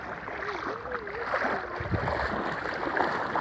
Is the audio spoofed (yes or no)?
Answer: no